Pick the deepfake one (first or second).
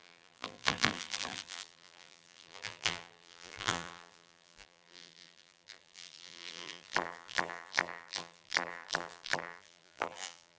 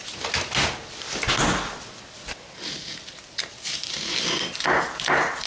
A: first